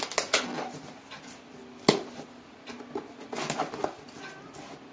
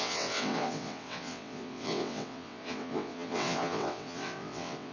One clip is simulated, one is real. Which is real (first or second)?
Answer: first